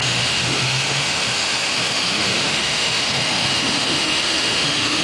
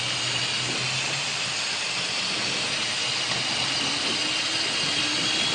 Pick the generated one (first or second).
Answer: first